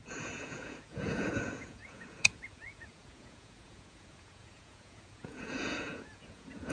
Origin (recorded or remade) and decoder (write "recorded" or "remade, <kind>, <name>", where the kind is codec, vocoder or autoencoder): remade, vocoder, Vocos